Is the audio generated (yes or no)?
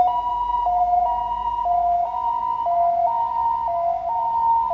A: no